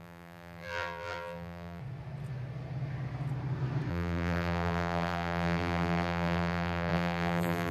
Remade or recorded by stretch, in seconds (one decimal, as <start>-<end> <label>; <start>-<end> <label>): 0.0-1.8 remade; 1.8-3.9 recorded; 3.9-7.7 remade